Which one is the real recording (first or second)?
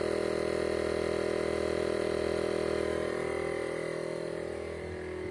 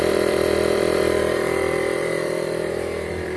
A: first